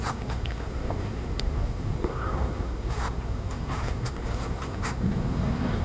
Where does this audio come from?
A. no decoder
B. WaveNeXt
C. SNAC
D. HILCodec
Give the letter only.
C